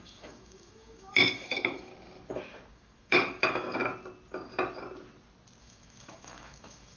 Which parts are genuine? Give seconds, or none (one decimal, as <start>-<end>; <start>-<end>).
1.9-2.7; 3.8-5.6